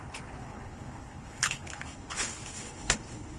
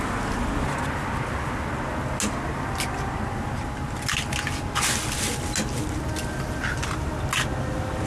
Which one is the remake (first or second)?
first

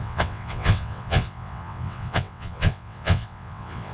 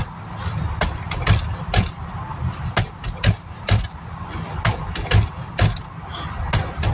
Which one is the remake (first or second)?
first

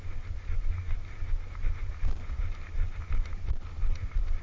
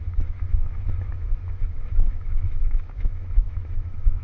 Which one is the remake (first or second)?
second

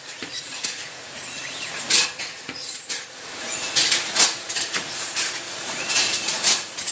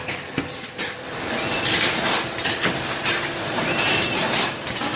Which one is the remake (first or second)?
first